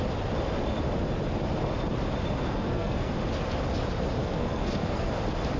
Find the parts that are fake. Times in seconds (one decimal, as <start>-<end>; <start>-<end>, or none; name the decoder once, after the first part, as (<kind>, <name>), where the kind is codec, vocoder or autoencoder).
2.4-3.1 (codec, SNAC); 4.2-5.1